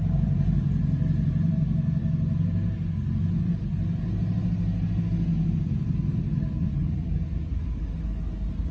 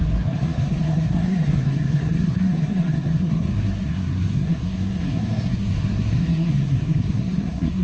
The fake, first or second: second